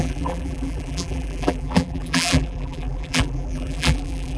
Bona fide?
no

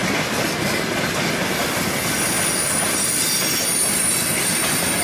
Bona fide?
yes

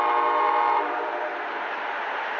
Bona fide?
no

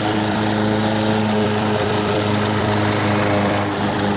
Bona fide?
no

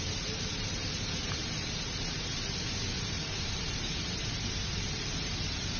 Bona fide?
no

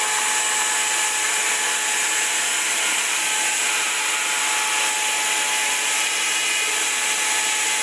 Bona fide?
yes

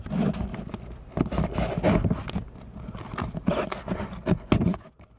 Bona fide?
yes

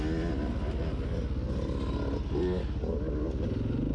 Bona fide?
yes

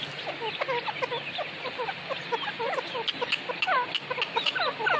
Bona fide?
yes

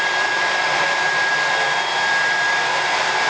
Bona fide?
no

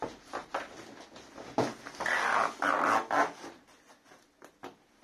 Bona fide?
yes